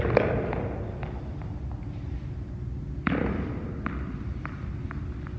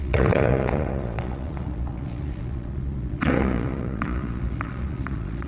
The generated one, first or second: second